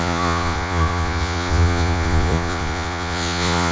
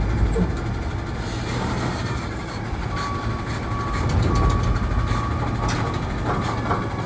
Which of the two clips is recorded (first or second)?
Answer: second